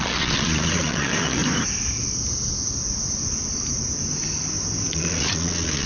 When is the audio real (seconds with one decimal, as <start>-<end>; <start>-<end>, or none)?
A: 1.4-4.9